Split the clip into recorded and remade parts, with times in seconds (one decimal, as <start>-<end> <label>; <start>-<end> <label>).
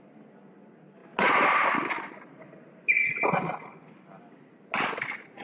0.0-5.4 recorded